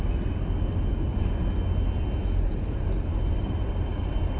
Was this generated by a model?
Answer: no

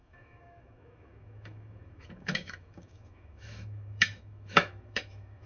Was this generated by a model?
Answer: yes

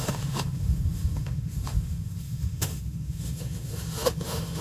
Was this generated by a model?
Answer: yes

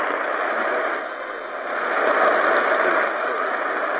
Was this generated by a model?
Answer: no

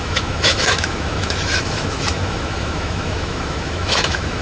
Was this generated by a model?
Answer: yes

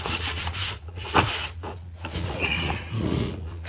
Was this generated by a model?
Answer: yes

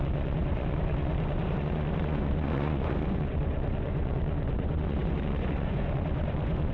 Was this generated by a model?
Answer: yes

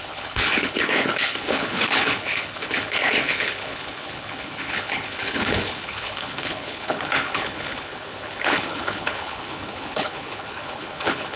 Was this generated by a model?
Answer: yes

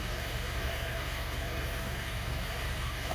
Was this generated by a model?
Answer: yes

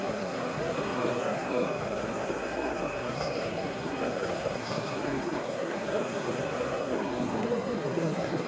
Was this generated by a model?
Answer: yes